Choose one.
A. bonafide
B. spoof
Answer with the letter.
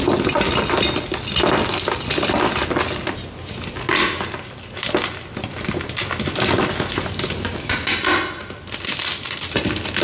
A